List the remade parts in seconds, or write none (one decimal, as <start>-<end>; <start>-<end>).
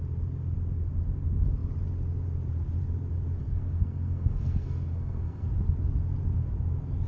3.4-5.5